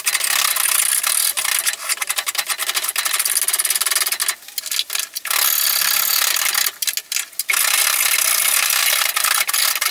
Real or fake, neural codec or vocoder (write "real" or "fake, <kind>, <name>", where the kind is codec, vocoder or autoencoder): real